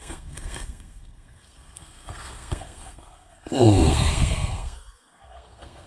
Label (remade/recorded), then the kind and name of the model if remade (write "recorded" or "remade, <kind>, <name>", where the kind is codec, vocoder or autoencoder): remade, codec, SNAC